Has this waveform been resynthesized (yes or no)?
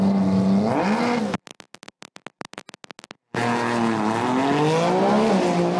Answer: no